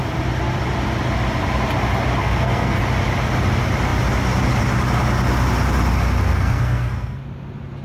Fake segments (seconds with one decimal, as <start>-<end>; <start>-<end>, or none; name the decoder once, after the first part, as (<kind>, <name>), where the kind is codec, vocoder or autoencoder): 2.2-2.8 (codec, SNAC); 6.3-7.2